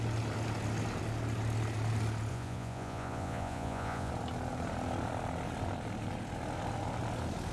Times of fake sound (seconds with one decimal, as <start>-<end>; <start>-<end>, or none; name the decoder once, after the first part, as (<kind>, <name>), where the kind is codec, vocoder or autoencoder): 2.3-4.1 (vocoder, Vocos)